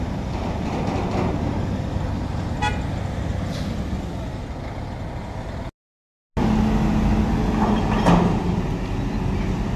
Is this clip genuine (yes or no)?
yes